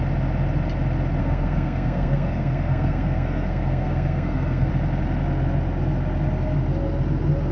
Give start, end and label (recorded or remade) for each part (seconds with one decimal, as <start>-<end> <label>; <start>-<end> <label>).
0.0-1.2 recorded; 1.2-4.7 remade; 4.7-7.5 recorded

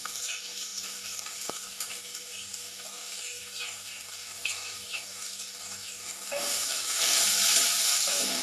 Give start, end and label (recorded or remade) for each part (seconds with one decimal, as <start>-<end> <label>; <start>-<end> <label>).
0.0-7.2 remade; 7.2-7.8 recorded; 7.8-8.4 remade

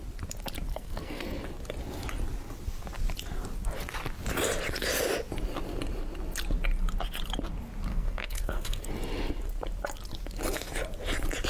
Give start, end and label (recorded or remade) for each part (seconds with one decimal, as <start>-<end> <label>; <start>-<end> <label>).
0.0-0.7 recorded; 0.7-1.4 remade; 1.4-7.9 recorded; 7.9-8.9 remade; 8.9-11.5 recorded